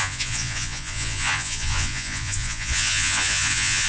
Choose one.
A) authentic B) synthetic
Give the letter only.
B